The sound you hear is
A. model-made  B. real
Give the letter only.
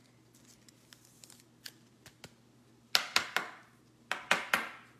B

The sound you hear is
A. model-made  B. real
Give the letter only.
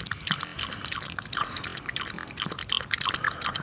A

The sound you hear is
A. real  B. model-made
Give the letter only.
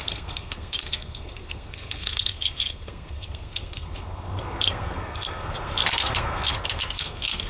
B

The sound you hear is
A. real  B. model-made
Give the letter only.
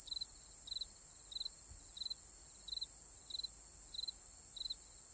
A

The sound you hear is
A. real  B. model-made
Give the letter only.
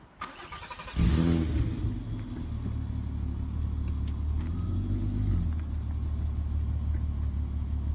A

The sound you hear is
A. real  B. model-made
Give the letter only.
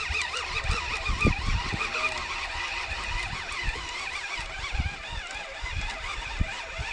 A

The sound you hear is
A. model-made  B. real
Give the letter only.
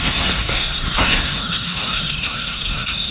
A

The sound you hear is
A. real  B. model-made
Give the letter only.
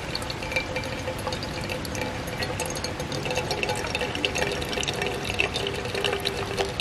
A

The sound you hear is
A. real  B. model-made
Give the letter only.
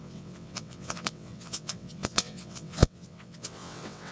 B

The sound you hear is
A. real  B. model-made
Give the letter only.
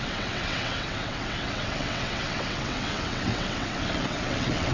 B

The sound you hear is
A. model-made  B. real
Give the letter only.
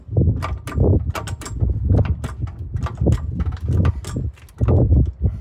B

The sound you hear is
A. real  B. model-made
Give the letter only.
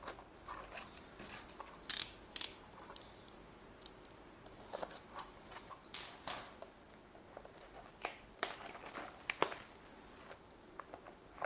A